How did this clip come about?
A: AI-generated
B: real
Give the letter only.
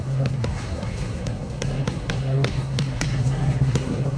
A